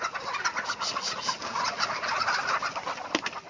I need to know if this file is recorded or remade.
recorded